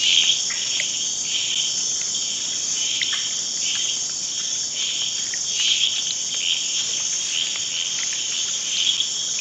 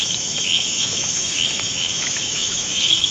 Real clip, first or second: first